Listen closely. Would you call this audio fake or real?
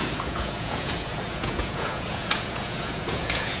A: fake